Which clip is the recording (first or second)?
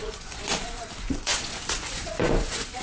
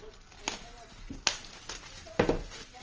second